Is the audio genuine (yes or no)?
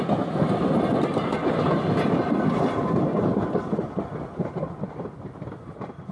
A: yes